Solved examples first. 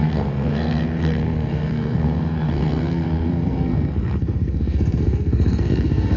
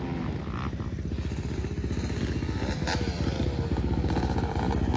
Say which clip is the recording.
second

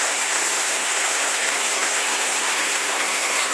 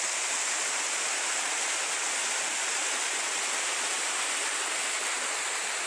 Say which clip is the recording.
second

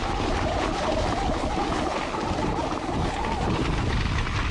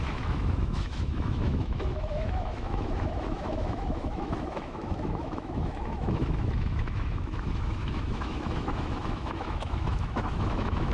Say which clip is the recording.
first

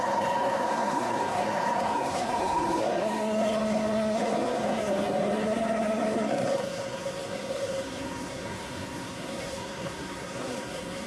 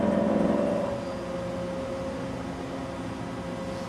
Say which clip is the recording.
second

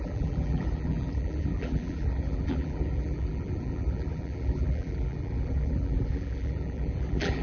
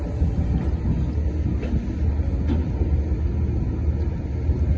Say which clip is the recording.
second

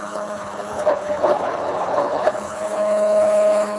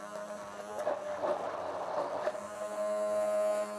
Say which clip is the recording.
second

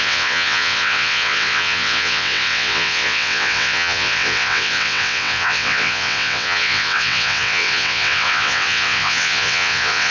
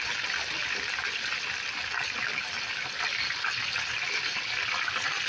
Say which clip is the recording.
second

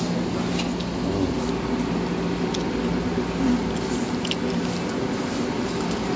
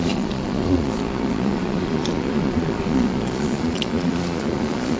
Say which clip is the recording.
first